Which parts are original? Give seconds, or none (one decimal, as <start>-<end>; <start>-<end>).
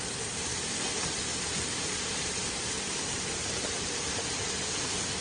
0.0-5.2